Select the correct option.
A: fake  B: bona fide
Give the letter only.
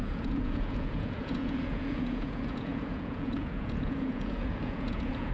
A